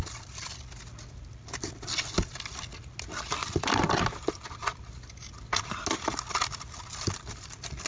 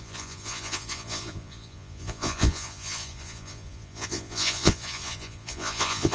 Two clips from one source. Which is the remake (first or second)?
second